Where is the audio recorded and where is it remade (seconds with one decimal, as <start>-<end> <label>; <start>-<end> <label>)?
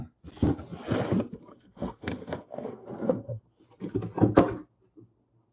0.0-1.5 recorded; 1.5-3.4 remade; 3.4-5.5 recorded